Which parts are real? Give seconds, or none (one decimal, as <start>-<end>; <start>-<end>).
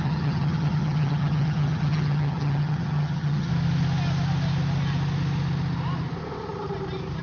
3.5-7.2